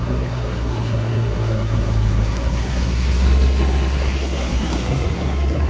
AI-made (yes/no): yes